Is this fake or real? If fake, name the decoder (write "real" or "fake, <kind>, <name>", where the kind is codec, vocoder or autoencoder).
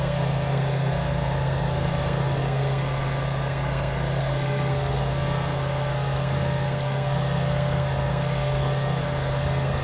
fake, codec, SNAC